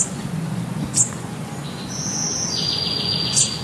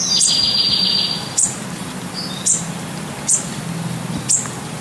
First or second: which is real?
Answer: second